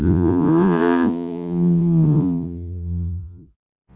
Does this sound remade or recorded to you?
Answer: remade